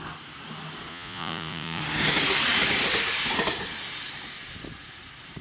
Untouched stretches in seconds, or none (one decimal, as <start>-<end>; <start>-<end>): 0.0-0.9; 1.8-5.4